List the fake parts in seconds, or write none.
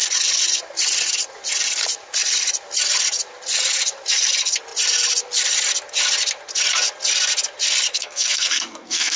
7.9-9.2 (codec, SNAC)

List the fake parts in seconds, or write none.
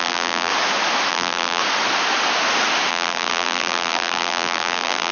0.0-0.5 (vocoder, BigVGAN v2); 1.1-1.6; 2.9-5.1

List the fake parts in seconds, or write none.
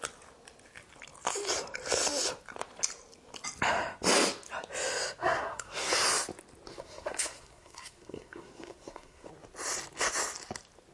5.2-5.9 (codec, SNAC); 6.7-9.3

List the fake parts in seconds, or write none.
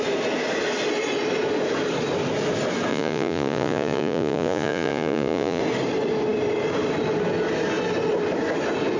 2.9-5.6 (vocoder, Vocos)